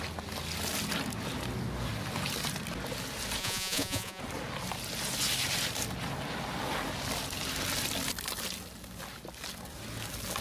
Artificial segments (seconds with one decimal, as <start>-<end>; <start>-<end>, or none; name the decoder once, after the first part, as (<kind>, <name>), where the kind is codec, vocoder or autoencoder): 3.4-4.2 (vocoder, Vocos)